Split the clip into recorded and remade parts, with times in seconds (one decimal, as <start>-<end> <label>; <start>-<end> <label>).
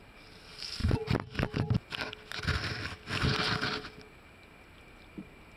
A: 0.0-5.6 recorded